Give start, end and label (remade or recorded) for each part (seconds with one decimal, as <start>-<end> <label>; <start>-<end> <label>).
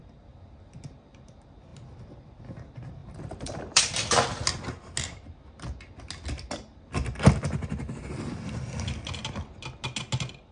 0.0-3.0 recorded; 3.0-3.8 remade; 3.8-10.5 recorded